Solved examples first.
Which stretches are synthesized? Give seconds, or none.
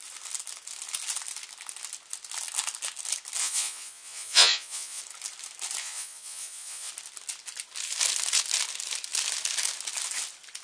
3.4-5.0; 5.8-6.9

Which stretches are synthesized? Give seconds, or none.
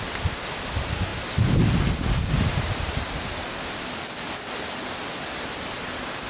none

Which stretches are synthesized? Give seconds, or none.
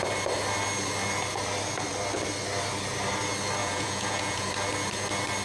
3.6-4.5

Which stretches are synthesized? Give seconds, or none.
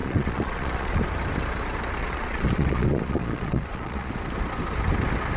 0.0-1.0; 2.0-4.1